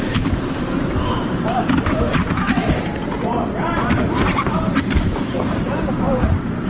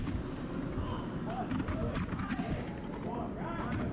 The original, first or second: second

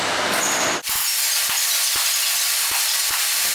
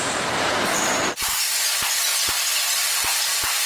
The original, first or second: first